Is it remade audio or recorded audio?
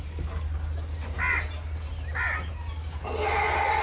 recorded